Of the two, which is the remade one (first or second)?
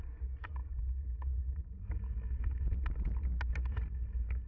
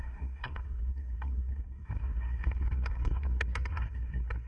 second